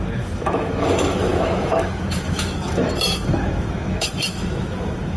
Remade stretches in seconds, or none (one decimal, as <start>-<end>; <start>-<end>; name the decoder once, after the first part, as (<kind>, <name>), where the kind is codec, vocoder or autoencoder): 0.0-5.2 (autoencoder, DAC-VAE)